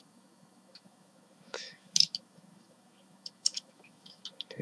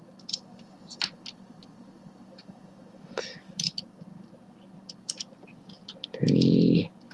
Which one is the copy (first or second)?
first